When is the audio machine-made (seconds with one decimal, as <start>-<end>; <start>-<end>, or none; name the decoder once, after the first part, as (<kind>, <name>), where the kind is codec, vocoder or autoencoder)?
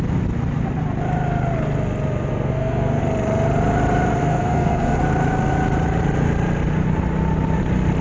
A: 2.3-3.0 (codec, SNAC); 4.2-5.0